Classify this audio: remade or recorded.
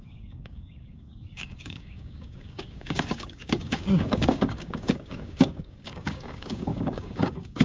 remade